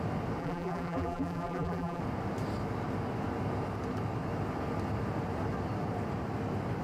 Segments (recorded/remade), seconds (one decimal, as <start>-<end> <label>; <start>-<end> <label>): 0.0-0.4 recorded; 0.4-2.0 remade; 2.0-6.8 recorded